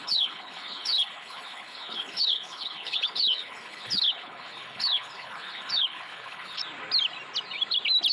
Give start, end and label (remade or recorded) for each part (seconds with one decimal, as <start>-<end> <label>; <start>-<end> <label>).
0.0-6.6 remade; 6.6-8.1 recorded